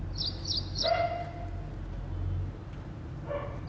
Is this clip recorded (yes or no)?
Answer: yes